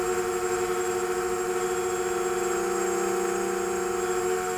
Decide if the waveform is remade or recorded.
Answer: recorded